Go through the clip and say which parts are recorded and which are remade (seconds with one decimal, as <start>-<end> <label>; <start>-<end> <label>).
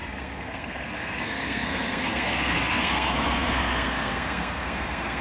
0.0-5.2 remade